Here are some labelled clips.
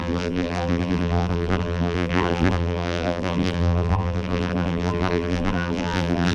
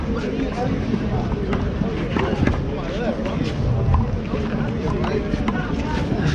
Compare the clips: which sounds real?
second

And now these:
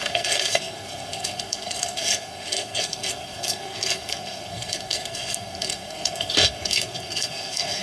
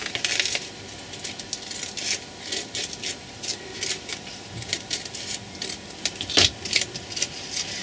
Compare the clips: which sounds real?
second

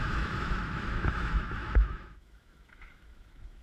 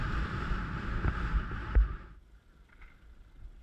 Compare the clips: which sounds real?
second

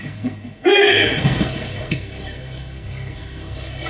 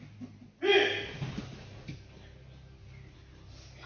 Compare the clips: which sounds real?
second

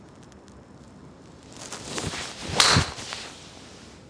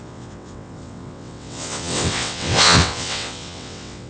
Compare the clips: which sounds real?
first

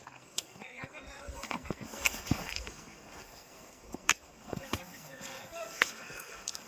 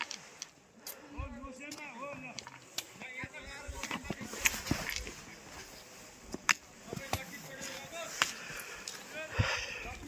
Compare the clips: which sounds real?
second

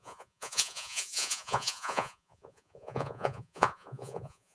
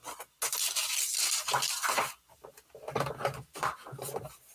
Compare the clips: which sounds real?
second